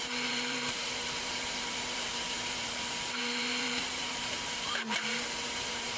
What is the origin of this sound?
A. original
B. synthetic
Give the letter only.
B